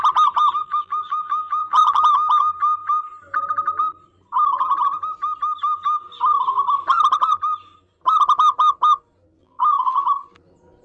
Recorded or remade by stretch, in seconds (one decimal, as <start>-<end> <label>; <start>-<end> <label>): 0.0-0.6 recorded; 0.6-2.0 remade; 2.0-9.4 recorded; 9.4-10.1 remade; 10.1-10.8 recorded